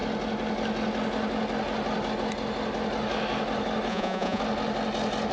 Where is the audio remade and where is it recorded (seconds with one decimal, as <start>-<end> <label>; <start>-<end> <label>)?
0.0-3.9 recorded; 3.9-4.4 remade; 4.4-5.3 recorded